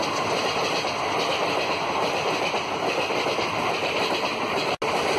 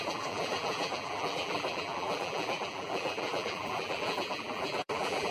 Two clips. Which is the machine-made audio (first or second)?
second